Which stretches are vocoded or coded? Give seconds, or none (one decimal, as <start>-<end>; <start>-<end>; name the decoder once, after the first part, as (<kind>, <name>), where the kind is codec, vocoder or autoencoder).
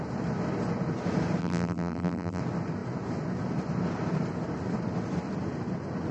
1.4-2.4 (vocoder, BigVGAN v2)